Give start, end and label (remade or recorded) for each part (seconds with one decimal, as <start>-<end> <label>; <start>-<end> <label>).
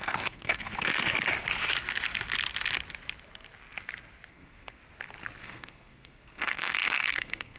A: 0.0-0.9 remade; 0.9-4.3 recorded; 4.3-4.8 remade; 4.8-5.4 recorded; 5.4-7.6 remade